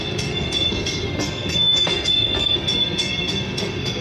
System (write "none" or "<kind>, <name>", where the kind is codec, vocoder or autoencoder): codec, SNAC